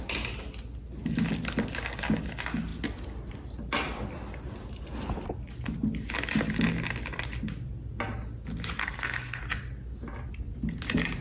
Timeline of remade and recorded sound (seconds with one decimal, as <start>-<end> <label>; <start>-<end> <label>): 0.0-8.8 recorded; 8.8-9.4 remade; 9.4-11.2 recorded